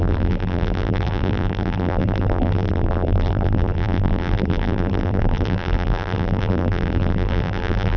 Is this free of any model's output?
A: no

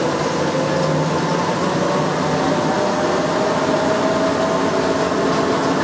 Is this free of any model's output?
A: yes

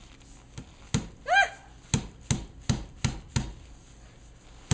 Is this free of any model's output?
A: yes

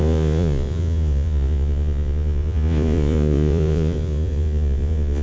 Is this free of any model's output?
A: no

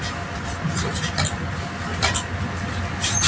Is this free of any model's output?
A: yes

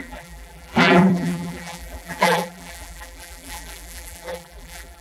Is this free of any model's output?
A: no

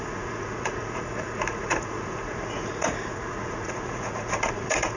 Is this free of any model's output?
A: no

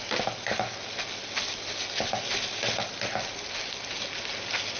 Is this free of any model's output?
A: yes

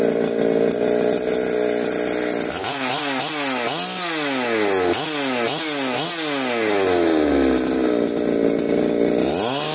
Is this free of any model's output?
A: yes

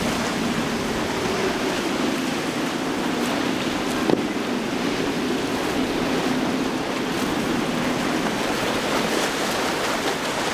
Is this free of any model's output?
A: yes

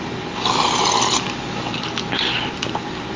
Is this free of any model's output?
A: yes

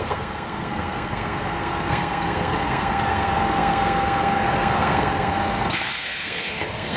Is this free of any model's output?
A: no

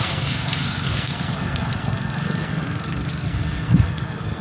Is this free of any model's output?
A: no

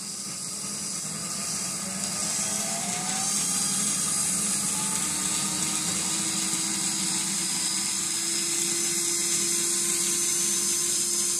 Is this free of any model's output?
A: yes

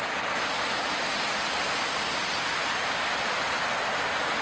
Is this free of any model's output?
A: yes